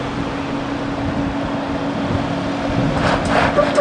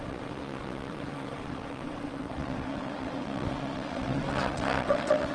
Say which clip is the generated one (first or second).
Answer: second